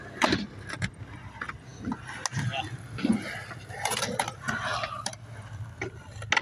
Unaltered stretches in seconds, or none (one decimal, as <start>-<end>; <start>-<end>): 0.0-6.4